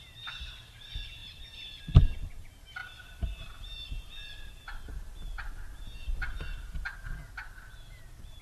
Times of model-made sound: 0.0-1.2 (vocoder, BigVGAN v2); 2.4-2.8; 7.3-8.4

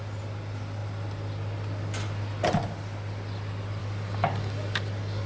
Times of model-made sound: 3.8-5.3 (codec, DAC)

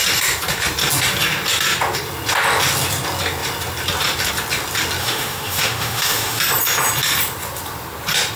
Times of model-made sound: 5.0-6.4 (autoencoder, DAC-VAE)

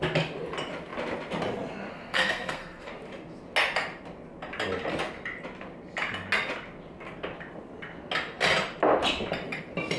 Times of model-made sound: 1.9-2.9 (codec, SNAC)

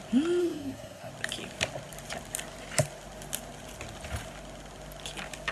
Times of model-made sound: 0.4-1.1 (codec, SNAC)

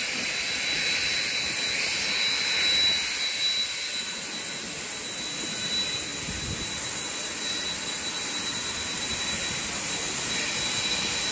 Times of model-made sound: none